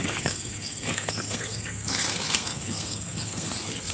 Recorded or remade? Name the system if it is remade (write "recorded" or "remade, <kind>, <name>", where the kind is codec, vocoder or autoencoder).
remade, codec, SNAC